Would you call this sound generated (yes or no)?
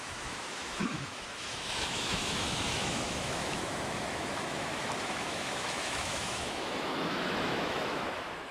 yes